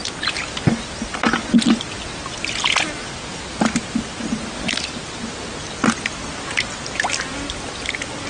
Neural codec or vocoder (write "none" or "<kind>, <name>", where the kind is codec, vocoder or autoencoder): none